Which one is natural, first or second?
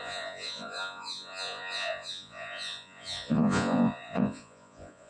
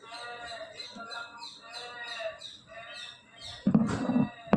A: second